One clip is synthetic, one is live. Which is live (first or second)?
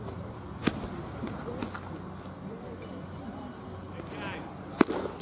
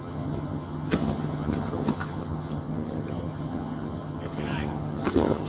first